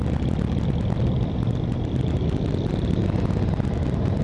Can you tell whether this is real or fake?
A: fake